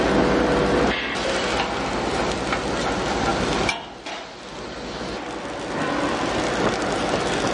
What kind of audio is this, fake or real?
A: real